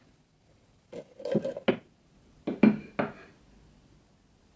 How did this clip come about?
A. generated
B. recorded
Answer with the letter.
B